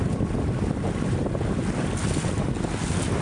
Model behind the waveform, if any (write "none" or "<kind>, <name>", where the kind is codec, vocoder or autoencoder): none